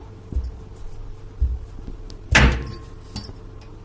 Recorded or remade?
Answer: recorded